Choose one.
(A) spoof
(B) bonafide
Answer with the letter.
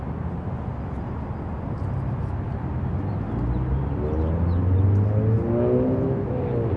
B